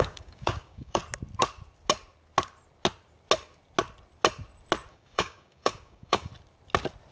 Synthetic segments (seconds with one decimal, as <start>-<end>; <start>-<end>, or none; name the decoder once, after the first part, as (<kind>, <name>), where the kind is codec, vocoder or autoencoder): 0.0-1.0 (codec, DAC); 4.9-6.3